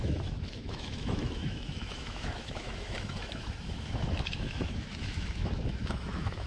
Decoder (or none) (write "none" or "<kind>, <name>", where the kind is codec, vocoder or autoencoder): autoencoder, DAC-VAE